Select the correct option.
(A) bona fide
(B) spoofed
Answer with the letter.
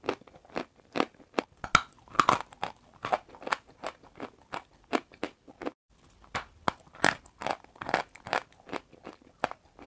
A